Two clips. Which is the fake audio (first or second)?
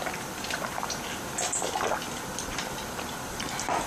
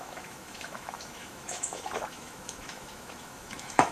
second